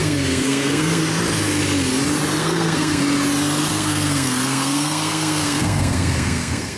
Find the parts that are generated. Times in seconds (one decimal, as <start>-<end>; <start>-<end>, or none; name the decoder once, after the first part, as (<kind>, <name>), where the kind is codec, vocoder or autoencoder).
0.0-1.0 (codec, SNAC); 2.4-3.0; 3.7-6.8